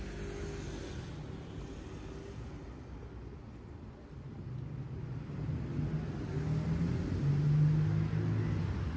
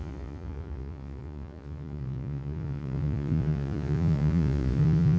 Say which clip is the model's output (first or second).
second